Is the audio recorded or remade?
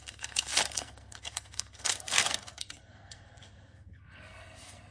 remade